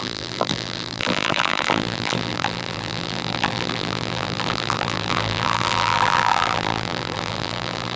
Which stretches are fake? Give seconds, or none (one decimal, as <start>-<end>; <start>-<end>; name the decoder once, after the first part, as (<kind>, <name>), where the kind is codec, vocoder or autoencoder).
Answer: 0.0-8.0 (vocoder, BigVGAN v2)